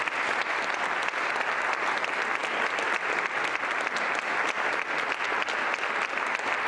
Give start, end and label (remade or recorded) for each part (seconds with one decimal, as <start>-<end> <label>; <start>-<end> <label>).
0.0-6.7 recorded